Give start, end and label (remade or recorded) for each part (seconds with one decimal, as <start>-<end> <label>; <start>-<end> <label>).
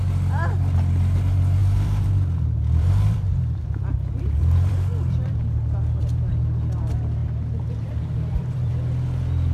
0.0-1.6 recorded; 1.6-6.3 remade; 6.3-7.2 recorded; 7.2-8.7 remade; 8.7-9.5 recorded